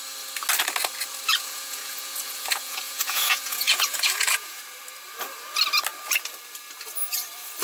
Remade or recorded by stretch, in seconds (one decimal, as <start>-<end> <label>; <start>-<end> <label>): 0.0-1.3 recorded; 1.3-4.6 remade; 4.6-7.6 recorded